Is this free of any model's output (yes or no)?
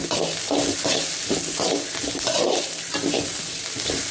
yes